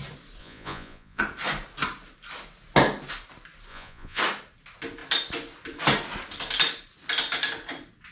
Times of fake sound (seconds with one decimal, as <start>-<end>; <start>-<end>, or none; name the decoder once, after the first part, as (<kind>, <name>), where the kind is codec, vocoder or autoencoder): 0.4-1.2 (vocoder, Vocos); 3.7-4.2